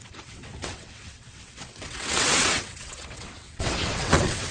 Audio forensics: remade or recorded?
remade